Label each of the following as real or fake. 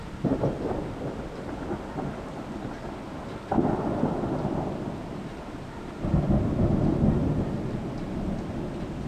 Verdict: real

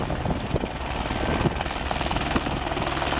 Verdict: real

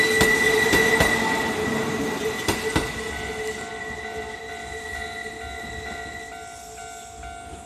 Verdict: real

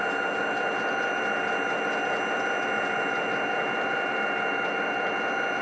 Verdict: real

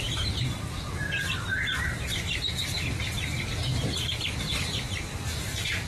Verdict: fake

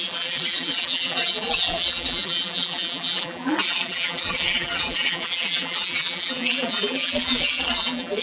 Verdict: fake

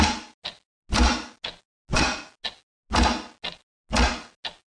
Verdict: real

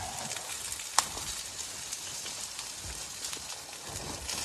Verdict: real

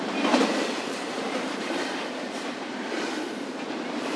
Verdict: fake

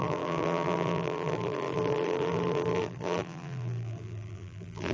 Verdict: fake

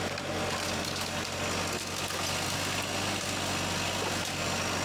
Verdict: real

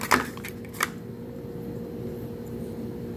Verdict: real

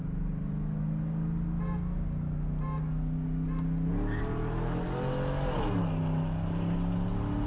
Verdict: real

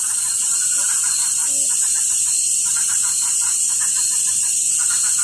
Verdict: fake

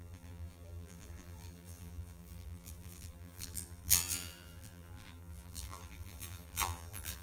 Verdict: fake